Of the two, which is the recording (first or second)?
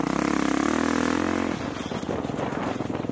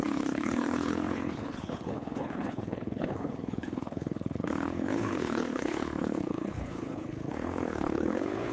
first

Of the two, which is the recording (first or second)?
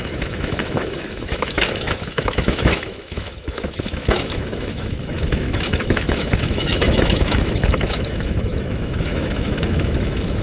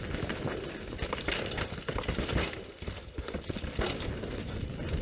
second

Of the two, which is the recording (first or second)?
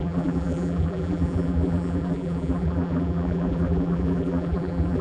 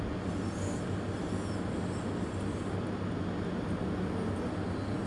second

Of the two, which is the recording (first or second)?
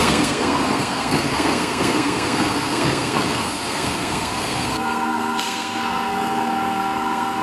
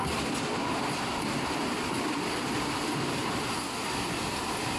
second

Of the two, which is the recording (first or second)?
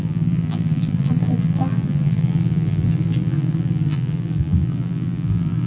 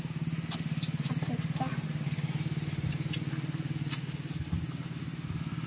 second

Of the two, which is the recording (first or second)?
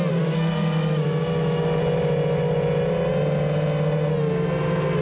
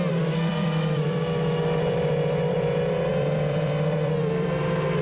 first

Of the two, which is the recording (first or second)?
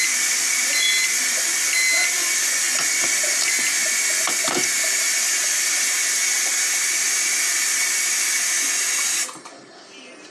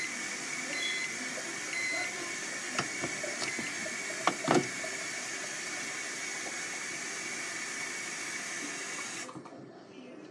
first